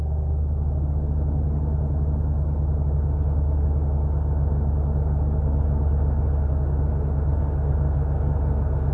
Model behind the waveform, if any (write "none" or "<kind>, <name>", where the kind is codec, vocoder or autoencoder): none